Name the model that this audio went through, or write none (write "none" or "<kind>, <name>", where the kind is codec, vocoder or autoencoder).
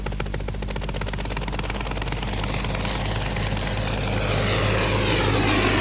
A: none